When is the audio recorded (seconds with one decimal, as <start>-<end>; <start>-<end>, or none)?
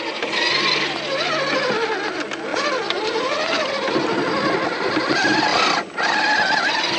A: 0.0-7.0